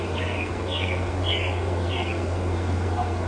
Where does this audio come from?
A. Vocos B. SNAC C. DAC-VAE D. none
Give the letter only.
B